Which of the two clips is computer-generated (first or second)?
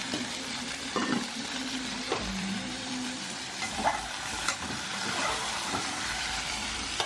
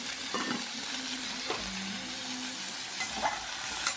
first